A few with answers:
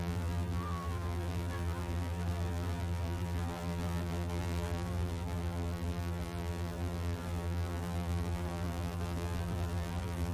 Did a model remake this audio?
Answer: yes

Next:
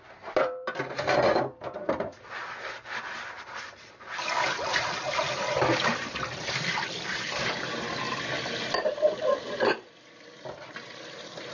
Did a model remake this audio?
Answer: yes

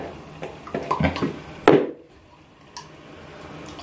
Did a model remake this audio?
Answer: no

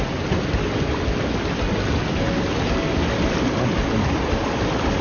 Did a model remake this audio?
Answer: no